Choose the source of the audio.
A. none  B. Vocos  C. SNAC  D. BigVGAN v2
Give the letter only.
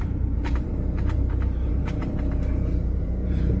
D